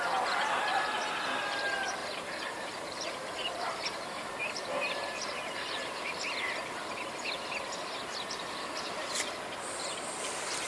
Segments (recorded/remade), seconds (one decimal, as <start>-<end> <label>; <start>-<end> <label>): 0.0-2.0 recorded; 2.0-6.0 remade; 6.0-10.7 recorded